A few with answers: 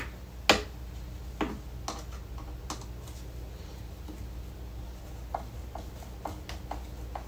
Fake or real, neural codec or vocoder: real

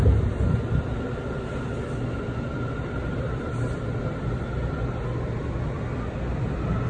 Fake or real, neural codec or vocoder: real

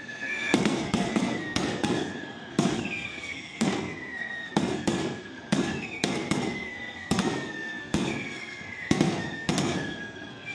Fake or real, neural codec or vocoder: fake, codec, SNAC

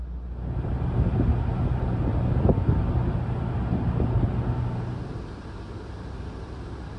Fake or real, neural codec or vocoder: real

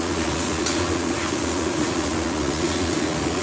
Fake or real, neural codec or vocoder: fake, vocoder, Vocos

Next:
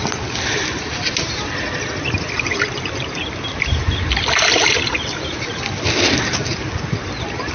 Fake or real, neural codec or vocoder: real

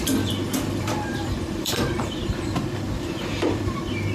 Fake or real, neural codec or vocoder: fake, vocoder, BigVGAN v2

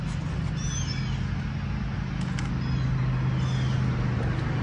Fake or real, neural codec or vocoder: real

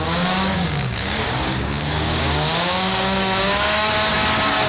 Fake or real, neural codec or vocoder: fake, codec, DAC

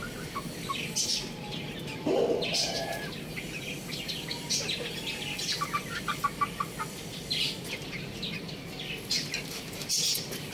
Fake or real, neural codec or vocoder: real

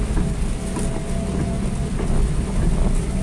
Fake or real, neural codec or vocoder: real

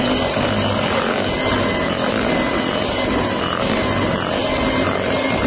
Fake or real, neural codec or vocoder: real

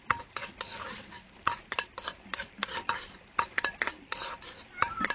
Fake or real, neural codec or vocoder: real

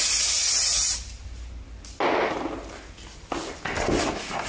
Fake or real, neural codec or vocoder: real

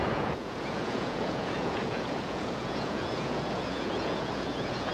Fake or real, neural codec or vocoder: fake, vocoder, Vocos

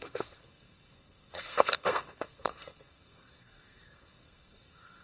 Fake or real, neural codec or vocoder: fake, codec, SNAC